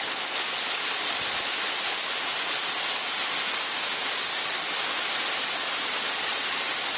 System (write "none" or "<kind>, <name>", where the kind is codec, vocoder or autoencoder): none